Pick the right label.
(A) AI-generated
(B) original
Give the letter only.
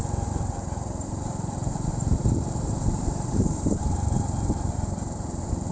A